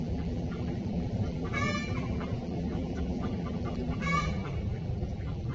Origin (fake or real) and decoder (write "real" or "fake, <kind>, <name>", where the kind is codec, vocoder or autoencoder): fake, vocoder, BigVGAN v2